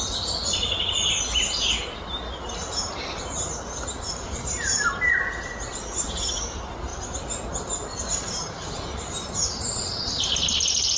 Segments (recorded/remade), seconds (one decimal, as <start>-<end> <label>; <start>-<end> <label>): 0.0-11.0 recorded